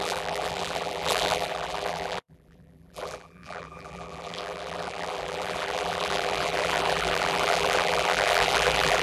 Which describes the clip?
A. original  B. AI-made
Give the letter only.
B